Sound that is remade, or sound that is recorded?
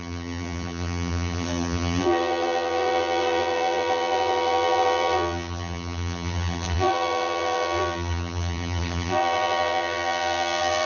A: remade